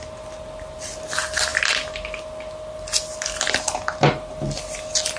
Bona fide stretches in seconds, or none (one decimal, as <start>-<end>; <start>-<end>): 0.0-5.2